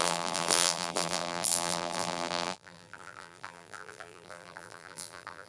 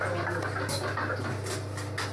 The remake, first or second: first